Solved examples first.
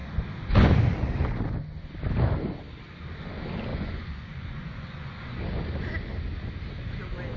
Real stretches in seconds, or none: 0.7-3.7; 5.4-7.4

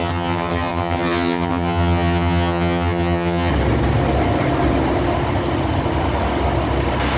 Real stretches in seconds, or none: 3.5-7.2

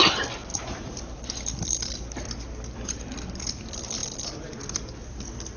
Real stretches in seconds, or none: 0.0-0.5; 3.4-5.6

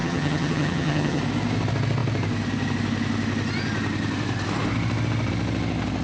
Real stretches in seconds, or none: 1.2-6.0

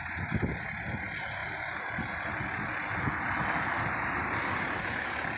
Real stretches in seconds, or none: 0.0-5.4

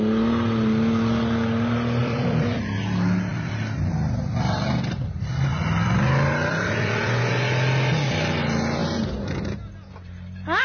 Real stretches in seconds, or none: 0.0-2.0; 2.6-3.3; 7.3-10.6

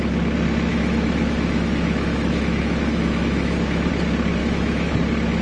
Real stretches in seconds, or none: 0.0-0.7; 3.9-4.4; 4.9-5.4

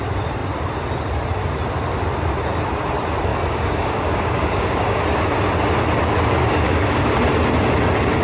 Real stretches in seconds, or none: 0.0-3.3; 5.0-6.4; 7.0-8.2